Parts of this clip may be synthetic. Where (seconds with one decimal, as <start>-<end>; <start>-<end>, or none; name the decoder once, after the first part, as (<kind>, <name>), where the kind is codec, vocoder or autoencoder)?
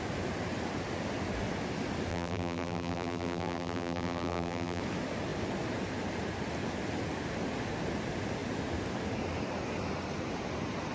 2.1-4.8 (vocoder, BigVGAN v2)